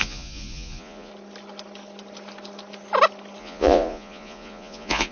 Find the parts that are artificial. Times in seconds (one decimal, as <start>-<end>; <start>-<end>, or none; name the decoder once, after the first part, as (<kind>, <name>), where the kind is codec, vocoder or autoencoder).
0.0-1.1 (vocoder, Vocos); 3.4-5.1